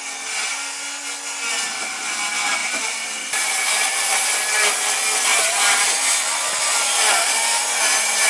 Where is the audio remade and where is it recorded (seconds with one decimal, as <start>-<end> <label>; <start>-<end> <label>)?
0.0-2.6 recorded; 2.6-4.1 remade; 4.1-5.3 recorded; 5.3-6.0 remade; 6.0-8.3 recorded